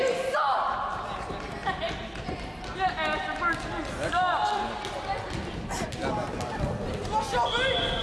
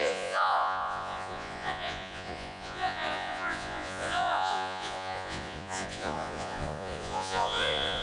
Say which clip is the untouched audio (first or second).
first